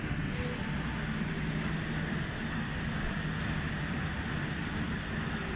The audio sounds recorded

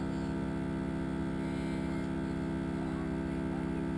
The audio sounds recorded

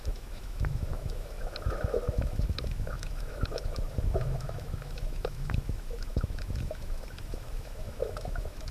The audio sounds remade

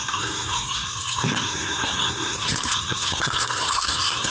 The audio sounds remade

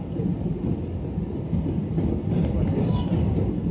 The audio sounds recorded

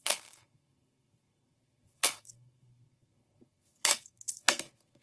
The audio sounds remade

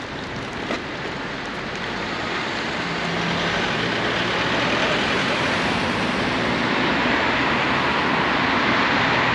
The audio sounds recorded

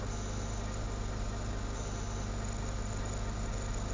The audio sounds recorded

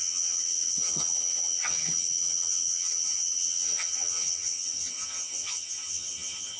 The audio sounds remade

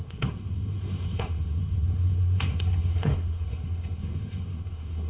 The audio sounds remade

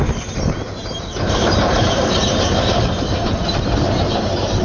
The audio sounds remade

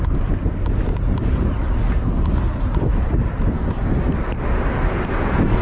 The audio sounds recorded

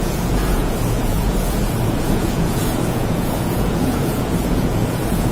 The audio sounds remade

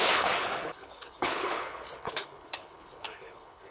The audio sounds remade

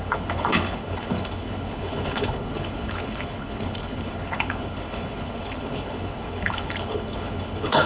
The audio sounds remade